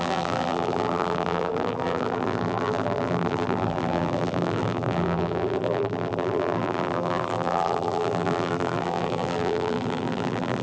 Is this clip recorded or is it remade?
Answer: remade